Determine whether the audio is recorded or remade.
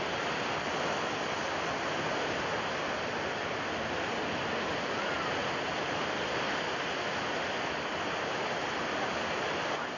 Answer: recorded